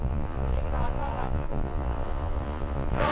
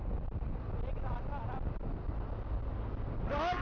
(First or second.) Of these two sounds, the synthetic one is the first